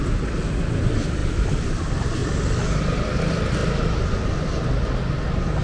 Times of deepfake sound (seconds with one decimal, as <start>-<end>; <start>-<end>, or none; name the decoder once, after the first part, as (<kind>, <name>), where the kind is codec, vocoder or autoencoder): none

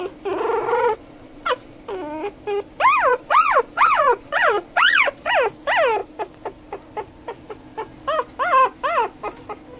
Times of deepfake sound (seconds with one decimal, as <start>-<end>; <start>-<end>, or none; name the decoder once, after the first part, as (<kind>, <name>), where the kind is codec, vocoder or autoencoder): 0.6-1.8 (vocoder, Vocos); 3.1-5.3

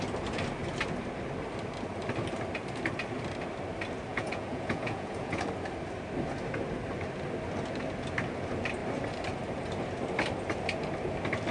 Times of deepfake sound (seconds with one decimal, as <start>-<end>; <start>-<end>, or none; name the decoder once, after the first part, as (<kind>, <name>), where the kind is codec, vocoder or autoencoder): 4.1-5.4 (vocoder, Vocos)